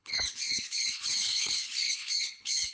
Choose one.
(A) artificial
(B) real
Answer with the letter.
A